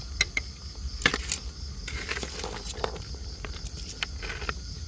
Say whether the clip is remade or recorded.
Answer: recorded